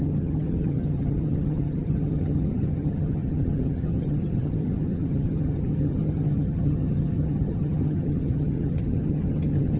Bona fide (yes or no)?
no